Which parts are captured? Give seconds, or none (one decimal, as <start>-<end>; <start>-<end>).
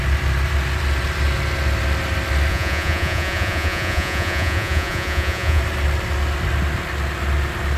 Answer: 0.0-2.5; 5.6-7.8